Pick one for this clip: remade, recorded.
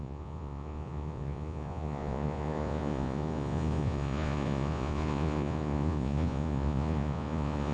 remade